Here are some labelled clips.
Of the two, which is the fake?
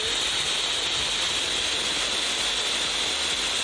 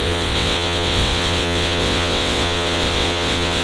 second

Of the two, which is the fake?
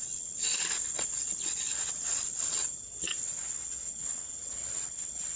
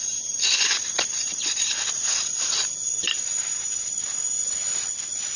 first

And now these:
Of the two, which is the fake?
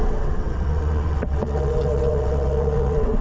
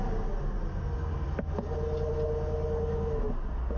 first